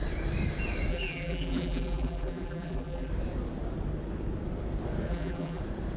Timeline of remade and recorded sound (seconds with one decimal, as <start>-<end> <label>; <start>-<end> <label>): 0.0-0.9 recorded; 0.9-3.1 remade; 3.1-5.1 recorded; 5.1-5.6 remade; 5.6-6.0 recorded